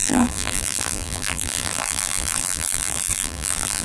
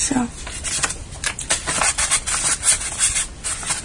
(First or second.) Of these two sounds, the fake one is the first